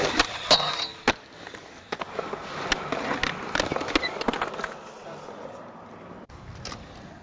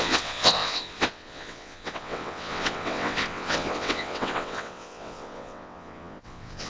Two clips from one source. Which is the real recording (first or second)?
first